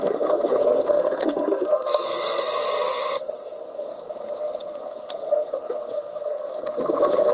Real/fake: fake